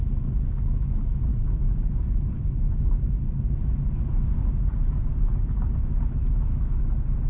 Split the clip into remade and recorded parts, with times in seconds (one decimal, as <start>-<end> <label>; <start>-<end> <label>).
0.0-1.3 recorded; 1.3-3.1 remade; 3.1-4.4 recorded; 4.4-6.0 remade; 6.0-7.3 recorded